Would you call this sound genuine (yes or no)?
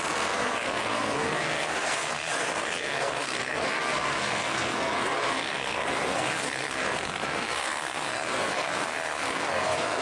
no